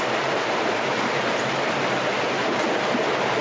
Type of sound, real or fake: real